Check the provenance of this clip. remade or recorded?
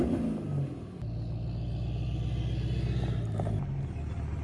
recorded